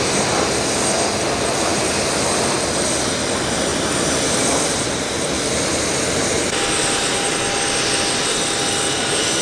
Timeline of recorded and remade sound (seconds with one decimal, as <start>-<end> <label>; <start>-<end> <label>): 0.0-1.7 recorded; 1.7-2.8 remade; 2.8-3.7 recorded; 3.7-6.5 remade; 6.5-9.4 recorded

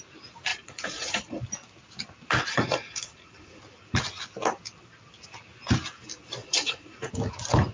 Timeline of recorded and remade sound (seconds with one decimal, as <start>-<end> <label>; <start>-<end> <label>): 0.0-0.5 recorded; 0.5-1.4 remade; 1.4-2.5 recorded; 2.5-3.6 remade; 3.6-6.4 recorded; 6.4-7.1 remade; 7.1-7.7 recorded

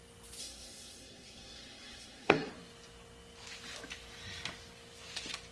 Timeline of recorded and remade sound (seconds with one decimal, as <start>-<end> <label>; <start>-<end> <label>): 0.0-0.4 recorded; 0.4-2.5 remade; 2.5-5.5 recorded

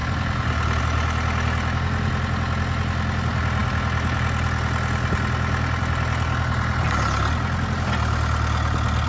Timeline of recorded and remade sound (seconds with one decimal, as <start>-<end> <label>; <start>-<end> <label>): 0.0-9.1 recorded

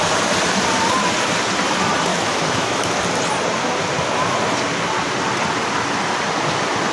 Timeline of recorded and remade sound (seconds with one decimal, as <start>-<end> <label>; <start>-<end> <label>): 0.0-2.1 recorded; 2.1-3.0 remade; 3.0-6.9 recorded

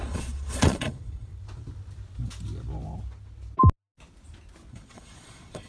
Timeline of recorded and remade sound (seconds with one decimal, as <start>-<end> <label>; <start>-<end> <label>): 0.0-1.3 remade; 1.3-4.7 recorded; 4.7-5.7 remade